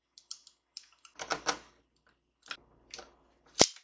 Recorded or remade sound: recorded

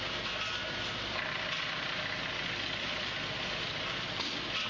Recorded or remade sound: recorded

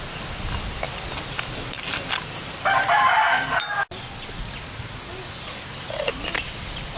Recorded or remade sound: recorded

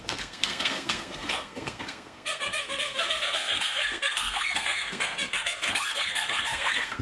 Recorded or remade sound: remade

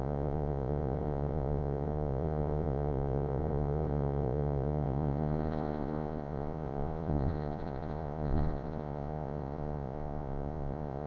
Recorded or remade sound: remade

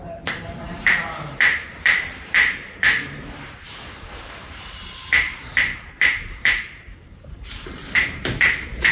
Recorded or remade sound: remade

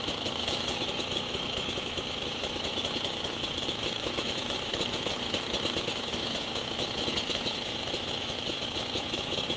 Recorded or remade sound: remade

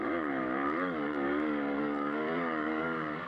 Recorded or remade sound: remade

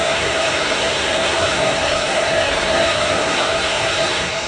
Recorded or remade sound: remade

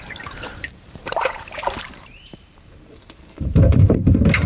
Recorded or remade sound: remade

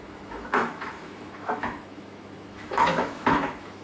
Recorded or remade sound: remade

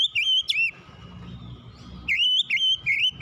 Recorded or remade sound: recorded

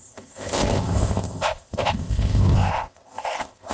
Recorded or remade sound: remade